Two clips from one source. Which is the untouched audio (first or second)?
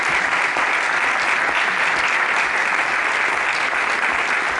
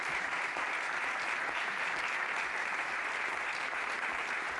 first